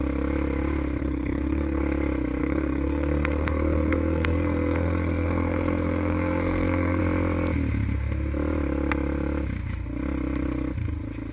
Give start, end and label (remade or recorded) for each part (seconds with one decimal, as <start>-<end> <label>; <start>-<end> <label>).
0.0-1.0 recorded; 1.0-1.8 remade; 1.8-2.4 recorded; 2.4-7.0 remade; 7.0-11.3 recorded